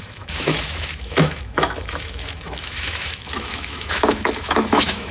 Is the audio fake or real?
fake